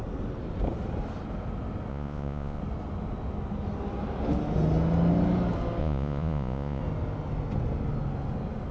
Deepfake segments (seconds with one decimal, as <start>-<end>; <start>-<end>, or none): 1.9-2.6; 5.8-6.8